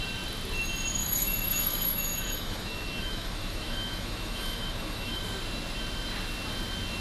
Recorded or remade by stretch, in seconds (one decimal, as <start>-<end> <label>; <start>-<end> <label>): 0.0-1.0 recorded; 1.0-5.2 remade; 5.2-7.0 recorded